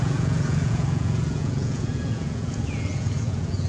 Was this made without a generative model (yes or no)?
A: no